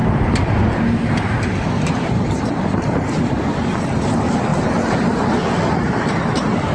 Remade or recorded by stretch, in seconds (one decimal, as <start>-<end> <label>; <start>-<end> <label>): 0.0-4.0 remade; 4.0-6.7 recorded